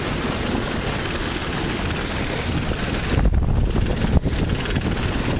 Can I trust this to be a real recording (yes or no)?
yes